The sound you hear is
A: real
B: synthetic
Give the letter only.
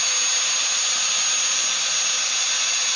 A